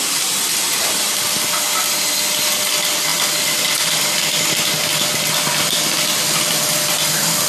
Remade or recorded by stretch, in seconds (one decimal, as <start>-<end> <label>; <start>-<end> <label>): 0.0-7.5 recorded